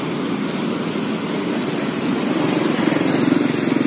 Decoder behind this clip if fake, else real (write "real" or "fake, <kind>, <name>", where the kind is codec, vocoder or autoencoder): real